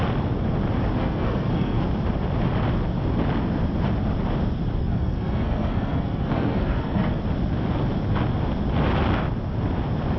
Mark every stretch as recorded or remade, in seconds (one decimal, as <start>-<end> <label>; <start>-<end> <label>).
0.0-1.0 recorded; 1.0-1.8 remade; 1.8-4.8 recorded; 4.8-7.2 remade; 7.2-10.2 recorded